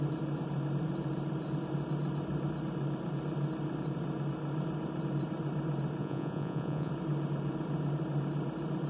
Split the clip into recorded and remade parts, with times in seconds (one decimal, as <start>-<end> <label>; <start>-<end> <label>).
0.0-6.0 recorded; 6.0-6.9 remade; 6.9-8.9 recorded